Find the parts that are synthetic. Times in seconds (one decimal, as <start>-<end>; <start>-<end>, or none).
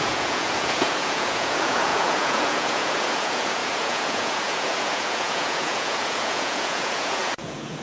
0.0-7.8